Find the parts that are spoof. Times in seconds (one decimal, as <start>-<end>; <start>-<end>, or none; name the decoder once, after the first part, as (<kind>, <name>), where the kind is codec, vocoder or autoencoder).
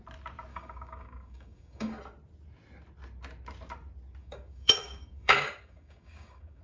0.5-2.0 (codec, DAC); 4.2-6.6